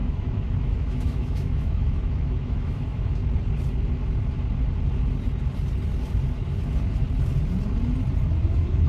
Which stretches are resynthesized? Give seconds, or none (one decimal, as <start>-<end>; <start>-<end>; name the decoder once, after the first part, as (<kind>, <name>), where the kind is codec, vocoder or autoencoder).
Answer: 0.0-3.2 (autoencoder, DAC-VAE); 8.4-8.9